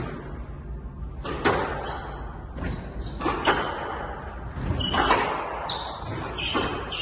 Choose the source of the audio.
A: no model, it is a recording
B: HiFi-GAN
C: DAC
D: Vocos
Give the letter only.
A